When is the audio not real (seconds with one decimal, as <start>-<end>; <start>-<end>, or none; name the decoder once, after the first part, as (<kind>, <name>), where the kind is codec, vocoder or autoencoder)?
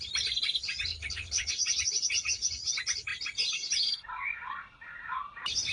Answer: 0.9-1.5 (codec, HILCodec)